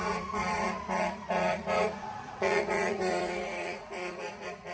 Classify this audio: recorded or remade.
remade